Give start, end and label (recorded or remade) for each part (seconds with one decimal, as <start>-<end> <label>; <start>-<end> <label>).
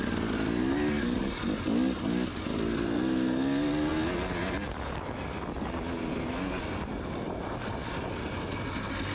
0.0-9.1 recorded